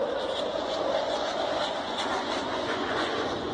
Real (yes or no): no